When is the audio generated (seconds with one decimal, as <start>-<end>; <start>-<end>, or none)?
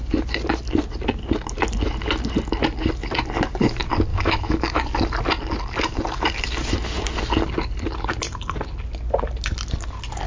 4.1-4.8